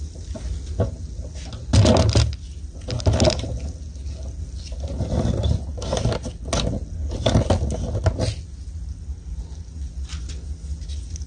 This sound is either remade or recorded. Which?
recorded